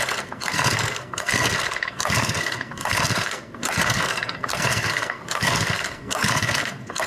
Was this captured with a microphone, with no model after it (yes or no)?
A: no